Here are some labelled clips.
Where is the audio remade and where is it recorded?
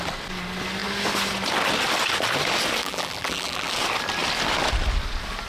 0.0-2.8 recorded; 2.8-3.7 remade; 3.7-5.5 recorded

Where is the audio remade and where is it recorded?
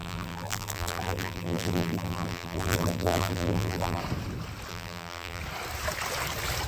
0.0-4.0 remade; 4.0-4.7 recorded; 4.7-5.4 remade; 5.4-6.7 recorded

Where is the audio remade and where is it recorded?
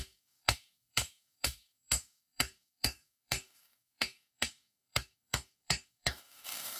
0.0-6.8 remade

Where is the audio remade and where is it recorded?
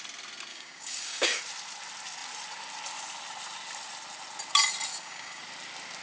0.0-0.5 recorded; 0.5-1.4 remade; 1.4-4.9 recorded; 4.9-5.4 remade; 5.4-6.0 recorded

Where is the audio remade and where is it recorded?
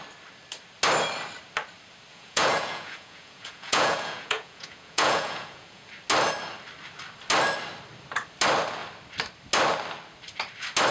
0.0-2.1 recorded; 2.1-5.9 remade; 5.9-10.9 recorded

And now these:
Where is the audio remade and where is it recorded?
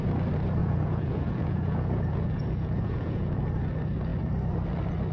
0.0-0.6 recorded; 0.6-3.4 remade; 3.4-5.1 recorded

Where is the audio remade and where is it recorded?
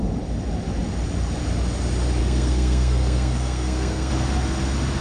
0.0-2.2 recorded; 2.2-4.1 remade; 4.1-5.0 recorded